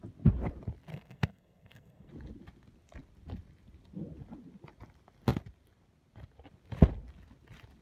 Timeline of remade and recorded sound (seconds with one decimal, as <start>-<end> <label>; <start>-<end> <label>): 0.0-0.9 recorded; 0.9-2.1 remade; 2.1-7.8 recorded